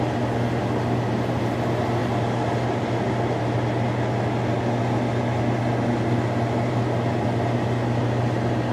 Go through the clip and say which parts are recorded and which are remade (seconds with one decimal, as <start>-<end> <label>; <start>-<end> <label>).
0.0-8.7 recorded